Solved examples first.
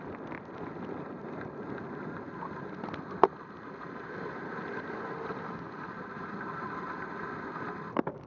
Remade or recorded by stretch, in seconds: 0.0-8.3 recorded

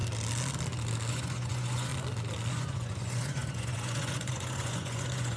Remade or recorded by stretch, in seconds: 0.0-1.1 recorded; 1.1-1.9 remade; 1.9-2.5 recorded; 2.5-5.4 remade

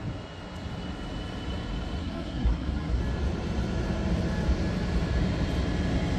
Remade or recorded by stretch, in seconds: 0.0-2.0 recorded; 2.0-3.0 remade; 3.0-6.2 recorded

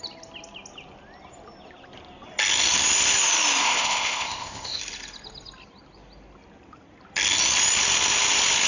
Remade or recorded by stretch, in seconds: 0.0-3.6 recorded; 3.6-4.8 remade; 4.8-8.7 recorded

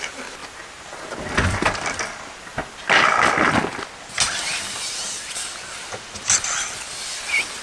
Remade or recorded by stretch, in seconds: 0.0-7.6 recorded

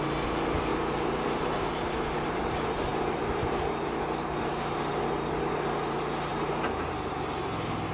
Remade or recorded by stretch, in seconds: 0.0-0.7 recorded; 0.7-2.4 remade; 2.4-6.3 recorded; 6.3-6.9 remade; 6.9-7.9 recorded

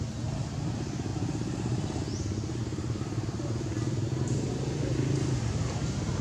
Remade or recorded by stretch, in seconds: 0.0-6.2 recorded

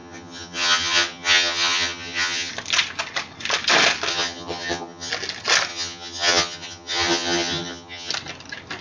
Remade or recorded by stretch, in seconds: 0.0-2.5 remade; 2.5-4.1 recorded; 4.1-5.1 remade; 5.1-5.7 recorded; 5.7-8.1 remade; 8.1-8.8 recorded